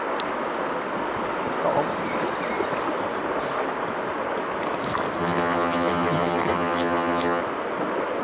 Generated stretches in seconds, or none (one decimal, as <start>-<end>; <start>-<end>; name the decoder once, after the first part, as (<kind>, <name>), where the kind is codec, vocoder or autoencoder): 5.2-7.4 (vocoder, HiFi-GAN)